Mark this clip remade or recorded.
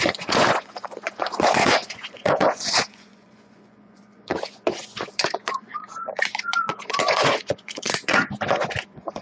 remade